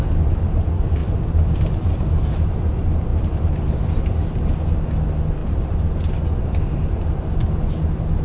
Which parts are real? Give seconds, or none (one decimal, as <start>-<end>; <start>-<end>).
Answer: 0.0-1.0; 2.7-3.1; 3.7-5.4; 6.9-8.2